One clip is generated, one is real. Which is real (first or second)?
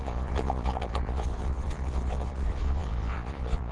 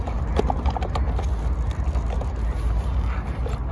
second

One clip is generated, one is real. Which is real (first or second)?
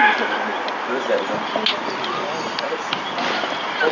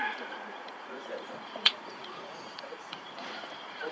first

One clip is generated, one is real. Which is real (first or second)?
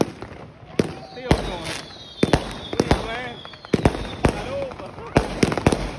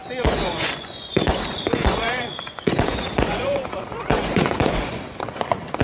first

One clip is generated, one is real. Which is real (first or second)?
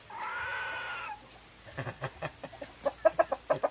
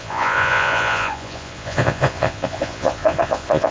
first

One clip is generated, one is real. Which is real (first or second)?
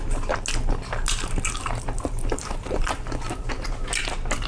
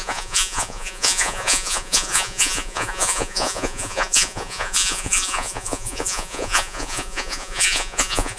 first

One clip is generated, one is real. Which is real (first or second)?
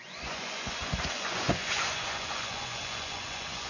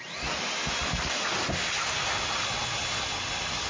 second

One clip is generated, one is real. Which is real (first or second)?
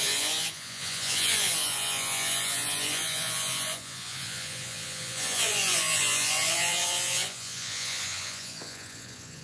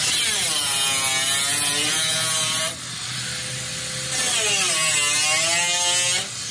second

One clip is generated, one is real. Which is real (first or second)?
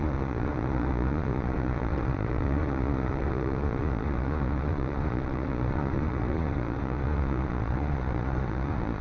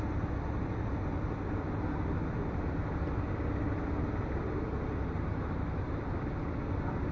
second